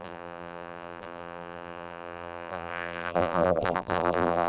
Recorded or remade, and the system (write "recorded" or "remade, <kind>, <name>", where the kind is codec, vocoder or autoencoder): remade, vocoder, BigVGAN v2